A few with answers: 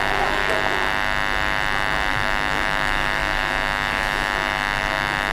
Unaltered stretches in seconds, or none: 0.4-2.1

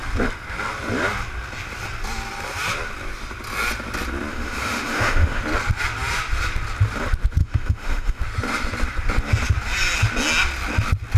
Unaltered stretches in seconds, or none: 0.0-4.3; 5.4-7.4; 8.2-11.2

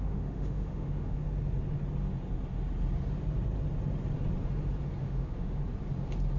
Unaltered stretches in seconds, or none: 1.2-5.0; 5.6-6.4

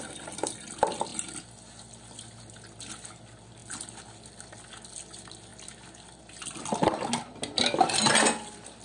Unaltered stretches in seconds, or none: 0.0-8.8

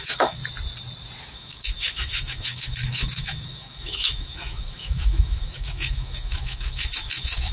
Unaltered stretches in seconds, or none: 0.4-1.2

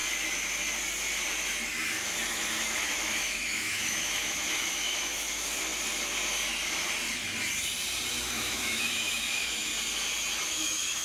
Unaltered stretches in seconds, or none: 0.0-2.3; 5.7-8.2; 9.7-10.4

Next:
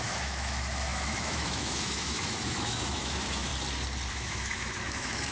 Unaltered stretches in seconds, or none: 3.5-4.1

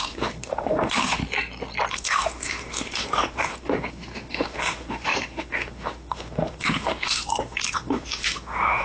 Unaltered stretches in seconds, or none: 1.2-1.9